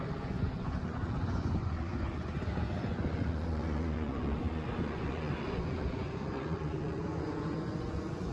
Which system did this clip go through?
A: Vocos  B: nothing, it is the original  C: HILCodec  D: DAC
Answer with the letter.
A